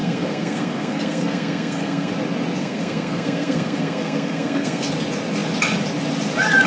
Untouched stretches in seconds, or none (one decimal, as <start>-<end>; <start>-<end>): 2.1-2.6; 4.9-6.7